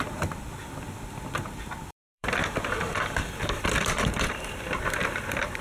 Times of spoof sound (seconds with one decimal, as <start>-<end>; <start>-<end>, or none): 0.0-2.4; 3.8-5.6